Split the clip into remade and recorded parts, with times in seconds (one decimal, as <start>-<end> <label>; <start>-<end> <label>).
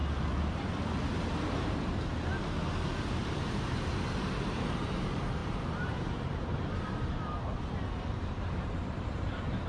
0.0-3.1 recorded; 3.1-9.7 remade